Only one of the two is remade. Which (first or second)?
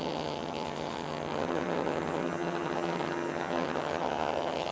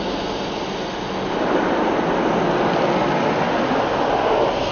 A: first